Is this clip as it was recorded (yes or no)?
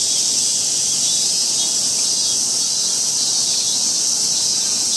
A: yes